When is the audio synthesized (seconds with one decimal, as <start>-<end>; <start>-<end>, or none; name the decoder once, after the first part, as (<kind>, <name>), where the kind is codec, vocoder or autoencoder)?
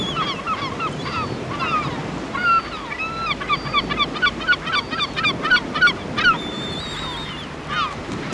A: none